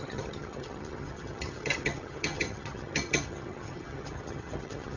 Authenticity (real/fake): fake